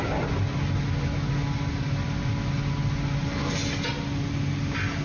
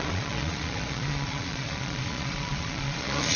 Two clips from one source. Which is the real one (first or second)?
first